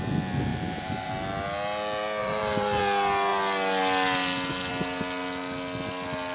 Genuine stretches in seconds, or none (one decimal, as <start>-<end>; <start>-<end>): 0.0-0.5; 1.1-2.2; 2.8-6.3